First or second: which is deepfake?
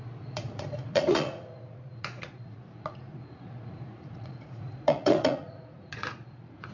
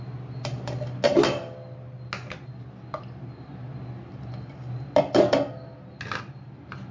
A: first